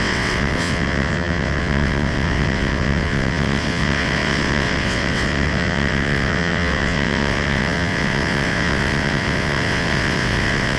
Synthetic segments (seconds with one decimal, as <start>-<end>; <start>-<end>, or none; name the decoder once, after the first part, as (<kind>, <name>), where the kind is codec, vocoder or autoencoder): 0.0-10.8 (vocoder, WaveNeXt)